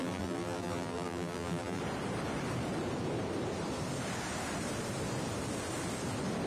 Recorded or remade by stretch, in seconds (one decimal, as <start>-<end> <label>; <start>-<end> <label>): 0.0-1.8 remade; 1.8-6.5 recorded